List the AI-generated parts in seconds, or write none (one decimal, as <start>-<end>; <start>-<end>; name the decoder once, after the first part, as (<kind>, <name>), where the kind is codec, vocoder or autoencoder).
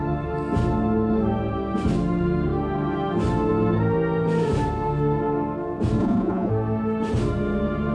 6.0-6.5 (vocoder, Vocos)